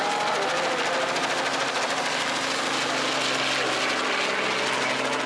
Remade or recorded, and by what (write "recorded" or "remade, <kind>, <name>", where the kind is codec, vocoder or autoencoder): recorded